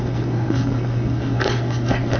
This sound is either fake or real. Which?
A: fake